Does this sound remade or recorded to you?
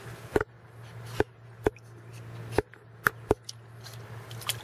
recorded